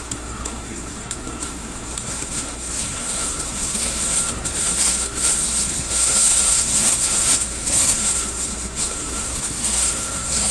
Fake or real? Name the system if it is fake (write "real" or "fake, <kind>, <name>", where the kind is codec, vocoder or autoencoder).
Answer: fake, codec, SNAC